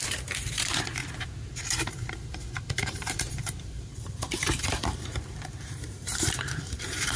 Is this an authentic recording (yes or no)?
no